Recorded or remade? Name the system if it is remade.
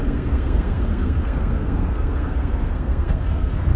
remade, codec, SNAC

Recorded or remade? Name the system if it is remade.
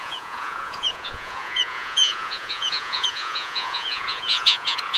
remade, vocoder, Vocos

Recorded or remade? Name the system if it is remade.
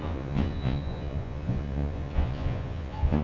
remade, vocoder, Vocos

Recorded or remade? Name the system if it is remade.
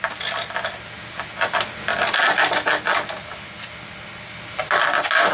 recorded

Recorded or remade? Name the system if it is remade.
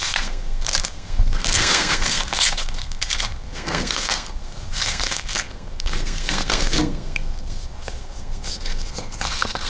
remade, codec, SNAC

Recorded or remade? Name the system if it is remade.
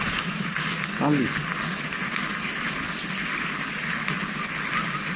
recorded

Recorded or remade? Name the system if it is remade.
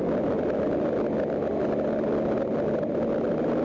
recorded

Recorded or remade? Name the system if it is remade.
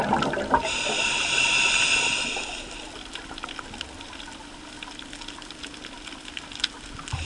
recorded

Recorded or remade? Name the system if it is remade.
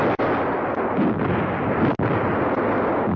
recorded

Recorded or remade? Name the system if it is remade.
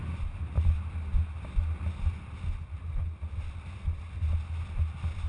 recorded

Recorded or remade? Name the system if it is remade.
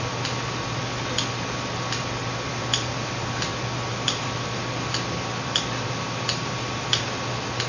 recorded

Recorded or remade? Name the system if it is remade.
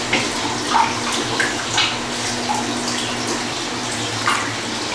recorded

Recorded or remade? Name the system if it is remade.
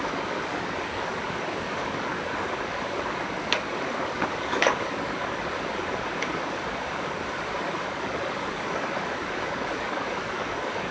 remade, codec, DAC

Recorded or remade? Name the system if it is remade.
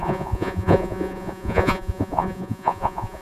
remade, vocoder, Vocos